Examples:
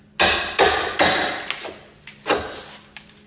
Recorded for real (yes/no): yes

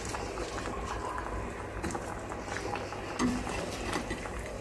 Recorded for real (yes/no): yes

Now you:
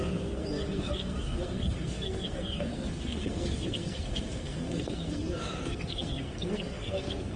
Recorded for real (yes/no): no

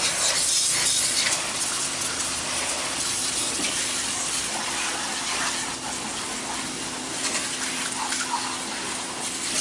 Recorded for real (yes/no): yes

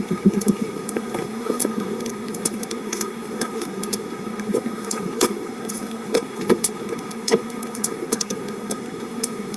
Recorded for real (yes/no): no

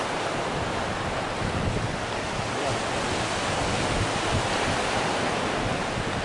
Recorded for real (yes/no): yes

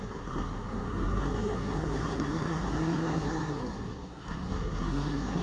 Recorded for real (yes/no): no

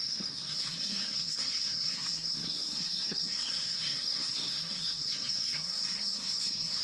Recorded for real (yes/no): no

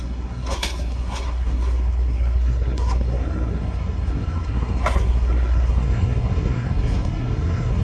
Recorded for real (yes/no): no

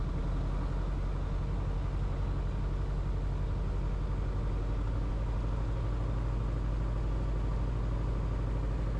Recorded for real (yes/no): yes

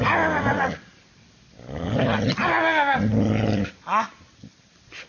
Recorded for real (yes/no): yes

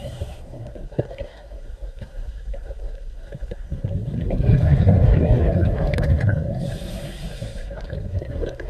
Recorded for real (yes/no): no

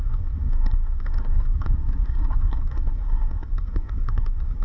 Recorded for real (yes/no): no